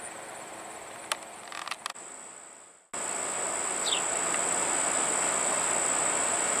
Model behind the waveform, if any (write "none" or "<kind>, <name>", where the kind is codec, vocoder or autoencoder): none